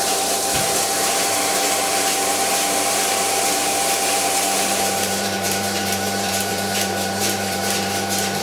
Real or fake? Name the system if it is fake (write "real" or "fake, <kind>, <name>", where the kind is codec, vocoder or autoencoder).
fake, vocoder, BigVGAN v2